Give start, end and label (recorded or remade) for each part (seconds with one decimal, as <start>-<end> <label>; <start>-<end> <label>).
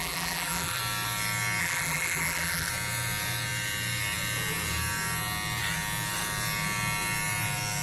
0.0-0.8 remade; 0.8-1.6 recorded; 1.6-2.7 remade; 2.7-7.8 recorded